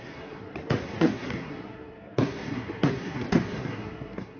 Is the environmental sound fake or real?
fake